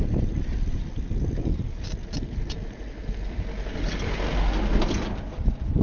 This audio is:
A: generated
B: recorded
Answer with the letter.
B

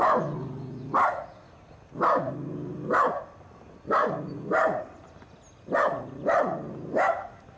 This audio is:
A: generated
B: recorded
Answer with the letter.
B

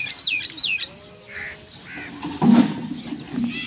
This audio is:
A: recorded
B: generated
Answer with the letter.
A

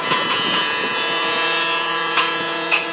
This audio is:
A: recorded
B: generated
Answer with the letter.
B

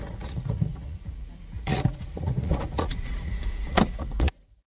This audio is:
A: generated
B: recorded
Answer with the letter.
A